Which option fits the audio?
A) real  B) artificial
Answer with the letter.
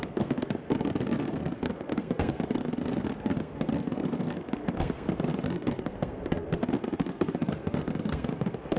B